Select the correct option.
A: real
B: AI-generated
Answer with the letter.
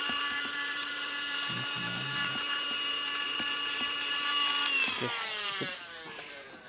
B